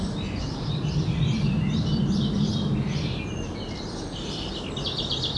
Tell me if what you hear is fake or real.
fake